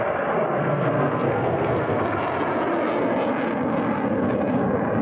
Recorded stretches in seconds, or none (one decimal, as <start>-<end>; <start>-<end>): 0.0-0.6; 2.0-5.0